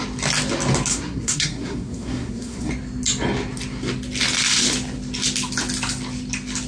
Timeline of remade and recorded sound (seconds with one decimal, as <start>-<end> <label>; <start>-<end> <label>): 0.0-0.9 recorded; 0.9-2.7 remade; 2.7-6.7 recorded